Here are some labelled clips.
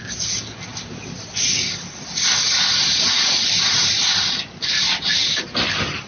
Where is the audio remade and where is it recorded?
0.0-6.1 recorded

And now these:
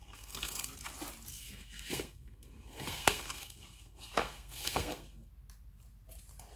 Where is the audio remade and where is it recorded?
0.0-0.7 remade; 0.7-1.3 recorded; 1.3-5.3 remade; 5.3-6.6 recorded